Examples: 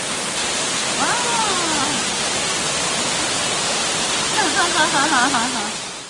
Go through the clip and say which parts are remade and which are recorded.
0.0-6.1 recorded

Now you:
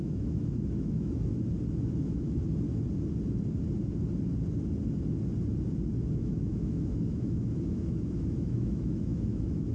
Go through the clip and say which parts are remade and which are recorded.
0.0-1.3 remade; 1.3-1.9 recorded; 1.9-2.4 remade; 2.4-6.1 recorded; 6.1-9.7 remade

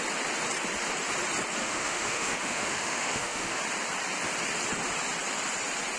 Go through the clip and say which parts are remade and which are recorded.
0.0-1.6 recorded; 1.6-3.6 remade; 3.6-6.0 recorded

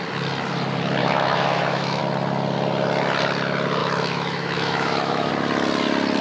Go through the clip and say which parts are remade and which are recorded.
0.0-1.0 recorded; 1.0-2.0 remade; 2.0-3.8 recorded; 3.8-5.3 remade; 5.3-6.2 recorded

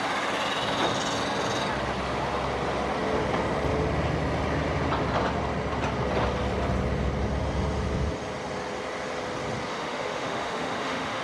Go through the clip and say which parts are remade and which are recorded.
0.0-9.7 recorded; 9.7-11.2 remade

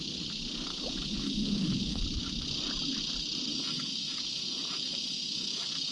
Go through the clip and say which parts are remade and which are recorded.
0.0-0.7 recorded; 0.7-2.0 remade; 2.0-3.5 recorded; 3.5-5.9 remade

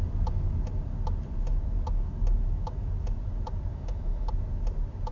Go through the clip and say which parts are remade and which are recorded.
0.0-3.7 recorded; 3.7-4.3 remade; 4.3-5.1 recorded